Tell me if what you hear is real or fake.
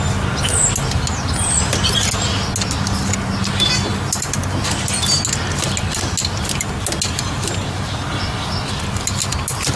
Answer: real